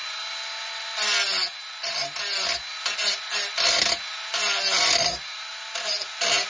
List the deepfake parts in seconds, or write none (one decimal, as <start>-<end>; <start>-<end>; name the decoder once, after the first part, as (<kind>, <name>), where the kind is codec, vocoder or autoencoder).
none